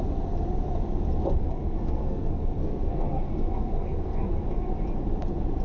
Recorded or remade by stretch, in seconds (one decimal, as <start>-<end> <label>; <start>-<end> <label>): 0.0-1.4 recorded; 1.4-4.7 remade; 4.7-5.6 recorded